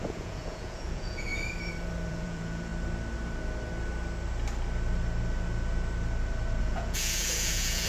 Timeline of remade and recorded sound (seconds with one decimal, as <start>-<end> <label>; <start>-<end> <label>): 0.0-1.3 remade; 1.3-2.1 recorded; 2.1-2.7 remade; 2.7-6.6 recorded; 6.6-7.9 remade